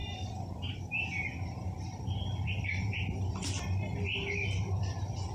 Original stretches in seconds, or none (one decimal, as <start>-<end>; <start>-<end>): 1.3-5.3